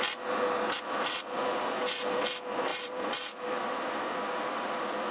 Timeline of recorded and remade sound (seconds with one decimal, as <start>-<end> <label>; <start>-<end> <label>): 0.0-1.8 recorded; 1.8-2.3 remade; 2.3-2.7 recorded; 2.7-5.1 remade